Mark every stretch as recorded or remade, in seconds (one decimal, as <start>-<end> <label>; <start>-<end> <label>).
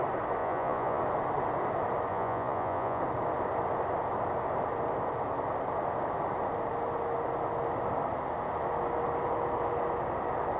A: 0.0-0.4 recorded; 0.4-1.0 remade; 1.0-2.1 recorded; 2.1-3.0 remade; 3.0-10.6 recorded